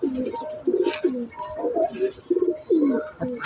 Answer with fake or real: real